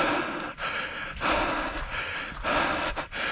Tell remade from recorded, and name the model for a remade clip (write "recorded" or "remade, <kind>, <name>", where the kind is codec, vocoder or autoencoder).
recorded